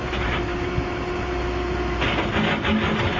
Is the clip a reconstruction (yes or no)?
no